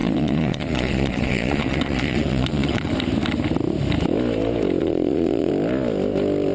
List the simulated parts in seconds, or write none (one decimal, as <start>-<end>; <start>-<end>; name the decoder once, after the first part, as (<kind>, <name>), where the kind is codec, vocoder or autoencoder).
0.0-2.9 (vocoder, Vocos); 4.8-5.5